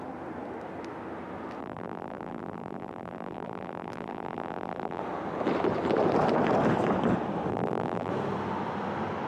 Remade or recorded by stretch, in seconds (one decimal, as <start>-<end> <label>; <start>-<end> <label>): 0.0-1.6 recorded; 1.6-5.0 remade; 5.0-7.5 recorded; 7.5-8.1 remade; 8.1-9.3 recorded